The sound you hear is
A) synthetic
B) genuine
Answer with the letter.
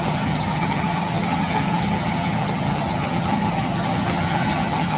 A